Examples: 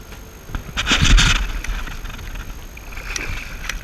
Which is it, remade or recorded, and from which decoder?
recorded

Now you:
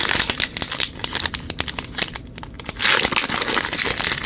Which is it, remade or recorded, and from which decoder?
recorded